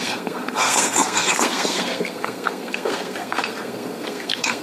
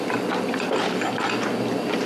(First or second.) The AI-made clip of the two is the first